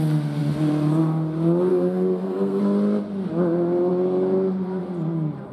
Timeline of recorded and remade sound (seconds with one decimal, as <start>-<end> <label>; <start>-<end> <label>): 0.0-1.7 recorded; 1.7-2.6 remade; 2.6-5.5 recorded

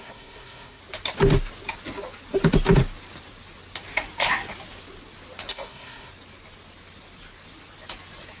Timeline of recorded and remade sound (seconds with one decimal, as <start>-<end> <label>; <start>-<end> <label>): 0.0-0.8 remade; 0.8-5.5 recorded; 5.5-6.1 remade; 6.1-8.4 recorded

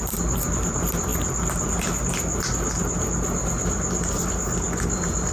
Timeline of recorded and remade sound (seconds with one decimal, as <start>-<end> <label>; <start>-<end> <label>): 0.0-5.3 recorded

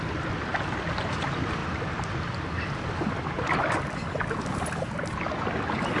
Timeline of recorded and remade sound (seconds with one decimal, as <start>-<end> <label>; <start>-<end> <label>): 0.0-6.0 recorded

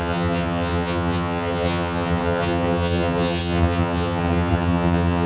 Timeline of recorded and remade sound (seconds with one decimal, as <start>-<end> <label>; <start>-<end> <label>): 0.0-5.3 remade

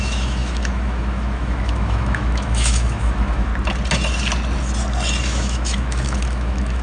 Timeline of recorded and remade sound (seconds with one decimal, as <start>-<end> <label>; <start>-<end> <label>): 0.0-3.5 remade; 3.5-5.2 recorded; 5.2-6.8 remade

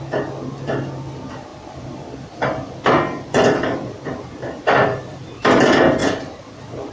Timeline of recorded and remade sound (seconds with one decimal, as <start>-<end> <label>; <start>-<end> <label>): 0.0-1.5 recorded; 1.5-5.6 remade; 5.6-6.0 recorded; 6.0-6.9 remade

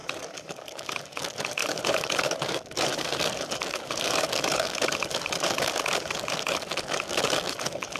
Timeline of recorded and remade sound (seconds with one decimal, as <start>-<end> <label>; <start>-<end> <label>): 0.0-8.0 remade